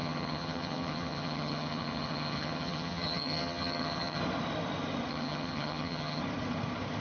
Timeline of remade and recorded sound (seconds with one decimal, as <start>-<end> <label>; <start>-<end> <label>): 0.0-4.2 remade; 4.2-5.1 recorded; 5.1-6.2 remade; 6.2-7.0 recorded